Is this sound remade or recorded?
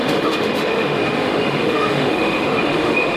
remade